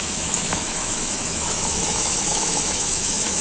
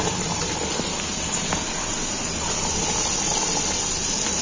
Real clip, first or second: second